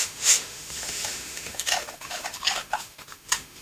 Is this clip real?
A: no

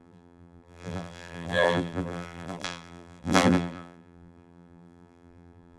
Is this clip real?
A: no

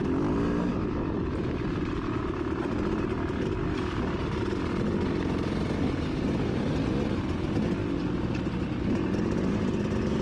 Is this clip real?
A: yes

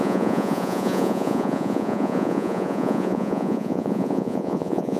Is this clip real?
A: no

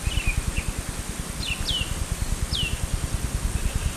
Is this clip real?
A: yes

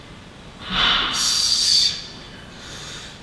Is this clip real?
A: yes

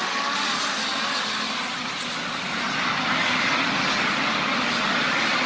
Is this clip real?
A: yes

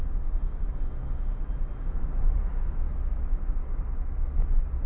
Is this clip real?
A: yes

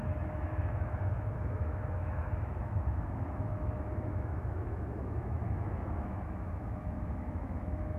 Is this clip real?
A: no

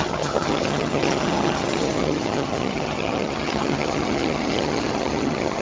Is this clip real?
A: no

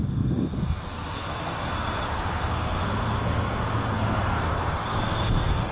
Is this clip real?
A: no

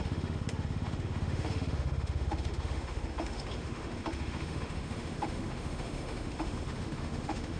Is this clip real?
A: no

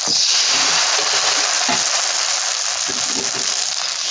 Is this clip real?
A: yes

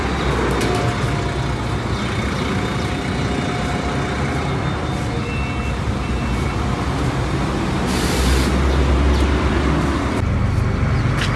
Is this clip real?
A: yes